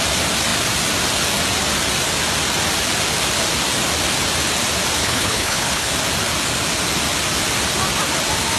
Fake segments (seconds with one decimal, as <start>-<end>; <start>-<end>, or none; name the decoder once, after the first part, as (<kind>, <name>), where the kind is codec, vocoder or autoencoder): 5.0-5.9 (codec, HILCodec)